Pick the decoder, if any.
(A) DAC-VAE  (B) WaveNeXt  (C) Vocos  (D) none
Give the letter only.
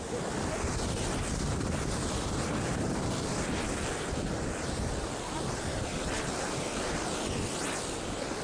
D